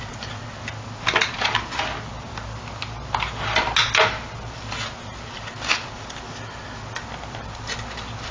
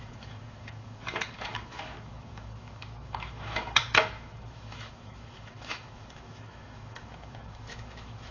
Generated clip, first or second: second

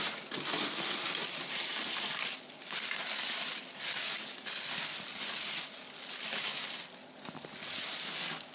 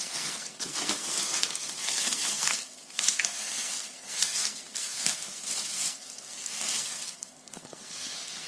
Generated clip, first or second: second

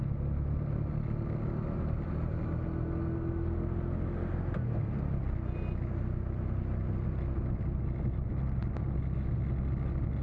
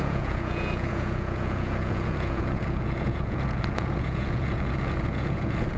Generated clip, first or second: second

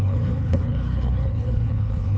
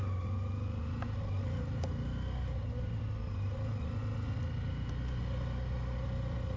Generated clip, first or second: first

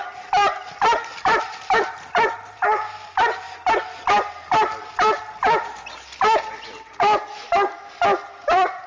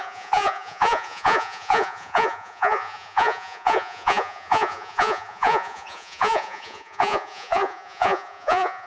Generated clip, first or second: second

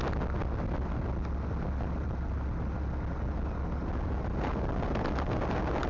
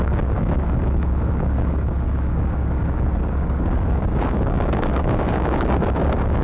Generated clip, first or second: second